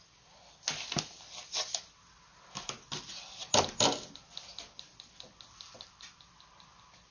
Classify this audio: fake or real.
real